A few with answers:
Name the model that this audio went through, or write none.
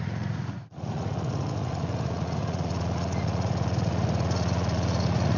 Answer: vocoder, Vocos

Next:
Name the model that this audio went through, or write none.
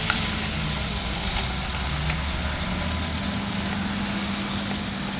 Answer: none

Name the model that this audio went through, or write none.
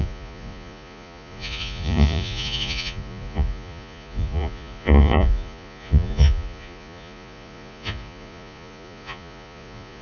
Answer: vocoder, Vocos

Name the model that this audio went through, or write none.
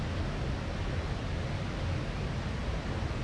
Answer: none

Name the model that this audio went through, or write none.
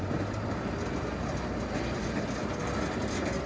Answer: none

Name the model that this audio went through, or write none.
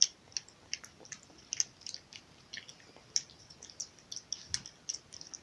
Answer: none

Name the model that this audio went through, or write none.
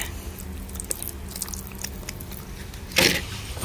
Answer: none